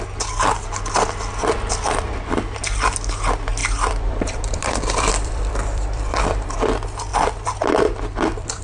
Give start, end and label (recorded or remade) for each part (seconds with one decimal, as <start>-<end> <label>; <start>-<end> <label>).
0.0-3.6 recorded; 3.6-6.5 remade; 6.5-7.1 recorded; 7.1-8.6 remade